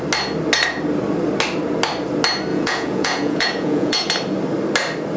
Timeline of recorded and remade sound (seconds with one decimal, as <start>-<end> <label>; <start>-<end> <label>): 0.0-2.5 recorded; 2.5-4.1 remade; 4.1-5.2 recorded